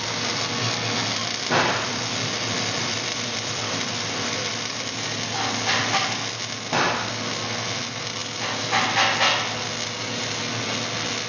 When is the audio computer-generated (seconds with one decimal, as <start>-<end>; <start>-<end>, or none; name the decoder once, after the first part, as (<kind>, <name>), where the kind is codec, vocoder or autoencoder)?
1.2-4.9 (vocoder, BigVGAN v2)